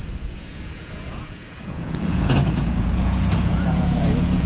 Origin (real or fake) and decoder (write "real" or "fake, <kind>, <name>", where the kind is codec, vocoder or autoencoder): fake, vocoder, Vocos